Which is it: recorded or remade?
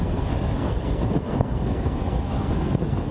remade